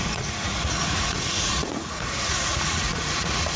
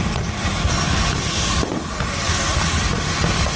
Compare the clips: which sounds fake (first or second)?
first